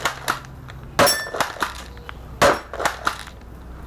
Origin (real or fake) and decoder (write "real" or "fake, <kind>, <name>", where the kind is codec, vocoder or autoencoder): real